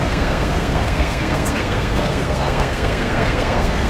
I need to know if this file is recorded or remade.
remade